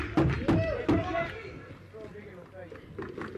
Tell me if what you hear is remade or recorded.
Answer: recorded